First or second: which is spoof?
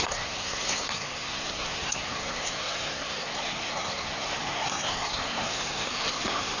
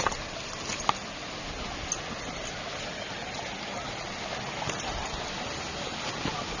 first